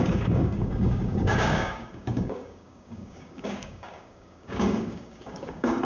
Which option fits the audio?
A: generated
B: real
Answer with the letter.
A